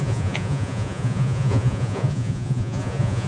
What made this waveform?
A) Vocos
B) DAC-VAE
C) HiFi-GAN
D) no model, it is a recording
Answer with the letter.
A